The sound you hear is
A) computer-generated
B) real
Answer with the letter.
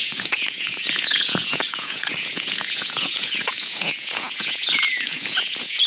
A